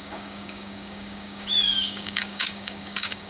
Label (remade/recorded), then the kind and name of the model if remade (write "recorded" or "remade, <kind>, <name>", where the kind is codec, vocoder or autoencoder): remade, codec, DAC